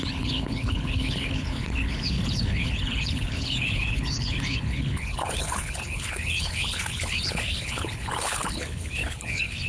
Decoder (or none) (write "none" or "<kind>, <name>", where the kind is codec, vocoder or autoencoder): codec, HILCodec